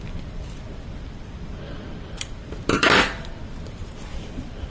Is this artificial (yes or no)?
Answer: yes